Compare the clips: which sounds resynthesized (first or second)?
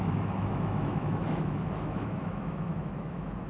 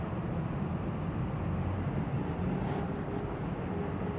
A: first